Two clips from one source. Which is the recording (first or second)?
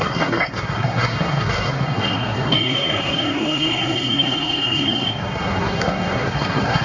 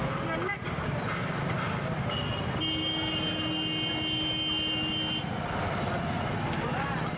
second